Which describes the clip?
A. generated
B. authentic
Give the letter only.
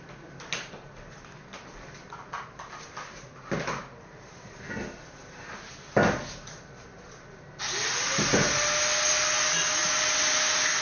B